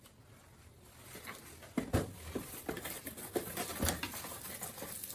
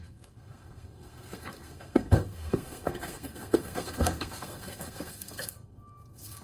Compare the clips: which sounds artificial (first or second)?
second